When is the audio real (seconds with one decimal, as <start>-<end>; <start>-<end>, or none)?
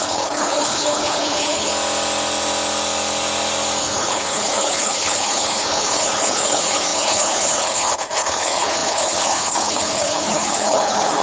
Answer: 1.7-3.8